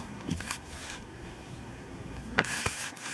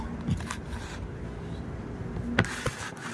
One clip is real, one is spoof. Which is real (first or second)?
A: second